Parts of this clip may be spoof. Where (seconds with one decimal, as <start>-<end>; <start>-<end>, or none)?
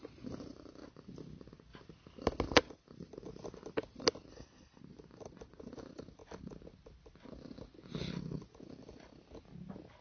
4.3-4.8